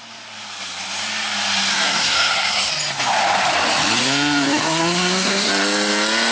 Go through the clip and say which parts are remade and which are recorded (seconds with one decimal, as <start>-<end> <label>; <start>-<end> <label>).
0.0-1.7 recorded; 1.7-2.7 remade; 2.7-4.0 recorded; 4.0-5.5 remade; 5.5-6.3 recorded